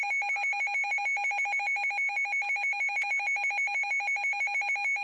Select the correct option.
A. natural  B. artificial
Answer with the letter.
A